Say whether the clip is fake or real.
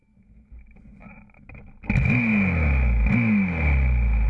real